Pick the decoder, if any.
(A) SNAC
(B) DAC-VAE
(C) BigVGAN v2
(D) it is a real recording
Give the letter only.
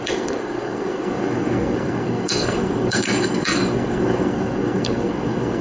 A